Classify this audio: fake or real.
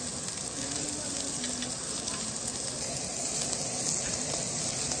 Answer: real